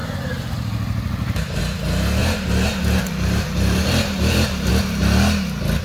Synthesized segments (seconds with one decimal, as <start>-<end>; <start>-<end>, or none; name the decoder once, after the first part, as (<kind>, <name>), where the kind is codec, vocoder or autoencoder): 0.0-1.6 (vocoder, BigVGAN v2); 2.2-4.7

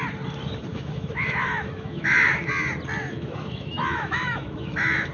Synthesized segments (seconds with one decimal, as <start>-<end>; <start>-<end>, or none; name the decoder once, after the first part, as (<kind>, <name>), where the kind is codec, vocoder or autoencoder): 0.7-2.5 (autoencoder, DAC-VAE); 3.0-5.1

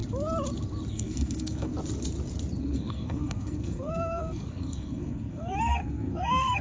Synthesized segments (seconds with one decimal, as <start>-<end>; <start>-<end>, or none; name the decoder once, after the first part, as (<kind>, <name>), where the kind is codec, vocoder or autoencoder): 0.9-1.7 (codec, SNAC); 2.6-6.6

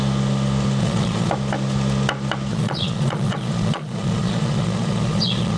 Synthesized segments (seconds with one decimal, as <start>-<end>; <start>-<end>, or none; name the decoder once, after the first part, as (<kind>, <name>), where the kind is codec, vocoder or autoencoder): 0.8-1.3 (vocoder, Vocos); 2.5-5.6

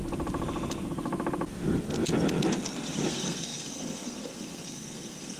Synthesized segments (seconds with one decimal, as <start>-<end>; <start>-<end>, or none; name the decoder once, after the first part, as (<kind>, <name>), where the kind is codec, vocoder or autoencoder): 3.1-5.4 (codec, SNAC)

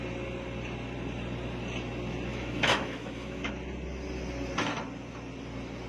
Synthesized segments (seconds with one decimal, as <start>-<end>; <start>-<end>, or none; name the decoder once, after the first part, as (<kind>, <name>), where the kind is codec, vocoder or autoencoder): 2.3-3.5 (autoencoder, DAC-VAE)

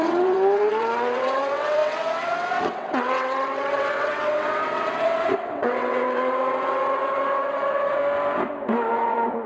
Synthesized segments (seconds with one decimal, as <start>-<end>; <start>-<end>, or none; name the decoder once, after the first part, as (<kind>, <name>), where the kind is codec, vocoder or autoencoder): 0.0-8.0 (vocoder, WaveNeXt); 8.9-9.5

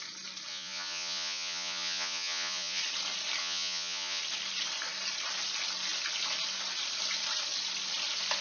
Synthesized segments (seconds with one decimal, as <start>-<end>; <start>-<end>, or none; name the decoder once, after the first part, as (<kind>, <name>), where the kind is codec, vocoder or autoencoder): 0.5-2.8 (vocoder, Vocos); 3.4-4.2